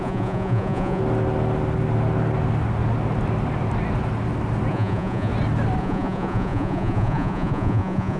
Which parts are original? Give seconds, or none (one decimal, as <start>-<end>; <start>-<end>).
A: 1.0-4.7; 5.3-5.8

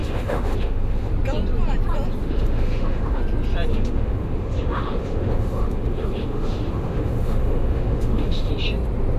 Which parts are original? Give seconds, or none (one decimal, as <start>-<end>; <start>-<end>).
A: 1.1-2.2; 3.2-3.7; 8.5-9.2